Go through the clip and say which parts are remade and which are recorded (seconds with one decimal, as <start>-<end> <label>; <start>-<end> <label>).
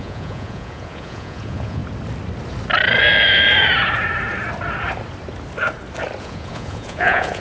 0.0-1.8 remade; 1.8-6.2 recorded; 6.2-7.4 remade